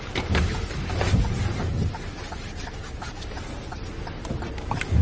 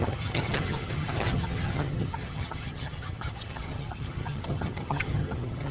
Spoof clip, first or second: second